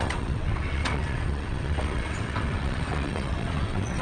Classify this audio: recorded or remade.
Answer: remade